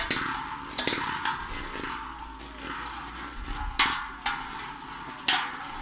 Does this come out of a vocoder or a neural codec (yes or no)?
no